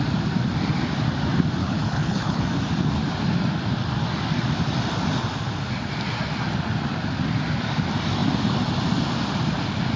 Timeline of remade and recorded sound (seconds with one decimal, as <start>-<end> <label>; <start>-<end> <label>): 0.0-1.6 recorded; 1.6-2.4 remade; 2.4-10.0 recorded